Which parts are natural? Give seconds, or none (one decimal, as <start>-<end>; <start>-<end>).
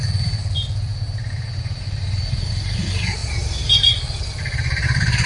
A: 0.9-1.8; 3.2-3.9